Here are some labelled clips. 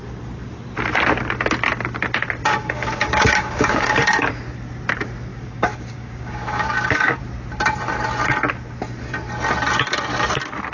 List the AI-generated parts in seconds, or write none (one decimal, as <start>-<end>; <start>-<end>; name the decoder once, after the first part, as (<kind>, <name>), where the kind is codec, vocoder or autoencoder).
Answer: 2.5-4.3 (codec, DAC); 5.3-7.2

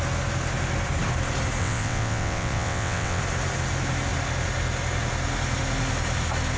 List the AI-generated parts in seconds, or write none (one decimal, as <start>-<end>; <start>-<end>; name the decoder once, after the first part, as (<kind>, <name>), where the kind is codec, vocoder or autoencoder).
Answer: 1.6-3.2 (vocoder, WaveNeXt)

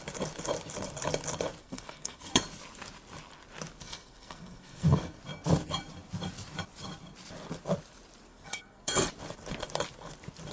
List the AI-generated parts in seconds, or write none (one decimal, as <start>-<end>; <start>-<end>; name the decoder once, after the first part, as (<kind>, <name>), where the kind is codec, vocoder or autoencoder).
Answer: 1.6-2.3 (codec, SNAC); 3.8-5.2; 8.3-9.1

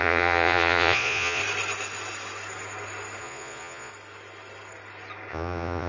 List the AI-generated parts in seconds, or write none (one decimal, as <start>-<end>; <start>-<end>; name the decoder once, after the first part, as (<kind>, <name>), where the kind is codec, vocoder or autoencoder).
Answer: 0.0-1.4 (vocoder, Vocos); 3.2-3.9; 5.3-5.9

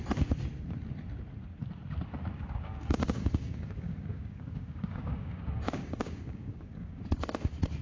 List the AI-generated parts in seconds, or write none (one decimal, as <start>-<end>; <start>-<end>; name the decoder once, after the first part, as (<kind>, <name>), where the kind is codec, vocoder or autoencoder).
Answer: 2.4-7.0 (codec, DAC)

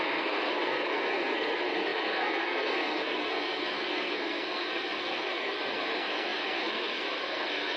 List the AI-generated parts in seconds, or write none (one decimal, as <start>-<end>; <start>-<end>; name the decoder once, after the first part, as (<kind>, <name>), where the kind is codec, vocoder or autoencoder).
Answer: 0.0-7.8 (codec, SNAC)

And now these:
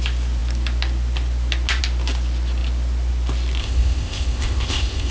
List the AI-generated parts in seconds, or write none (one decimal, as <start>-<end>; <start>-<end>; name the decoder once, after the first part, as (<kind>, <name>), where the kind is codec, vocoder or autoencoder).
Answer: 3.6-5.1 (codec, ZipCodec)

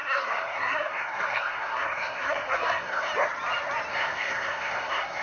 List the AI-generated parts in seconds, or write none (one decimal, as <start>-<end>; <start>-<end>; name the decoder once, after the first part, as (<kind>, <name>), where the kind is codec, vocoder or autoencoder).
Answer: 0.0-3.1 (codec, SNAC); 3.9-5.2